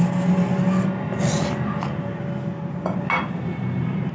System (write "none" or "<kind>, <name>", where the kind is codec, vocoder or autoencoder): none